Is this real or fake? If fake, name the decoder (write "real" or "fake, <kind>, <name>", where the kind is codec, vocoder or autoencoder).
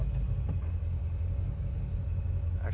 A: real